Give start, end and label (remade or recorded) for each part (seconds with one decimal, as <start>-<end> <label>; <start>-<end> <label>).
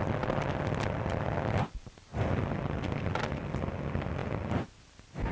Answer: 0.0-2.1 recorded; 2.1-3.4 remade; 3.4-5.3 recorded